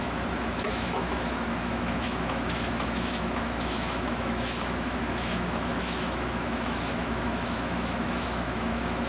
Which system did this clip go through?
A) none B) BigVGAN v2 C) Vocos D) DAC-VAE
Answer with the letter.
D